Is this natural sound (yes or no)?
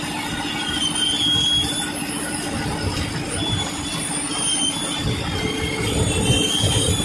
yes